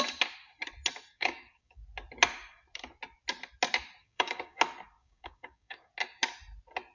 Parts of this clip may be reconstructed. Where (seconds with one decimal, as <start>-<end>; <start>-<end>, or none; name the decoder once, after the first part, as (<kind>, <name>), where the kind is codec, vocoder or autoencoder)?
1.1-1.8 (codec, DAC); 4.0-4.6; 5.0-5.9